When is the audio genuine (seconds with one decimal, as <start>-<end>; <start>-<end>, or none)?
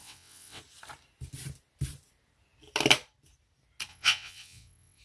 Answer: 0.6-3.9